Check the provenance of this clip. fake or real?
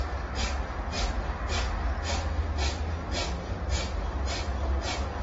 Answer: real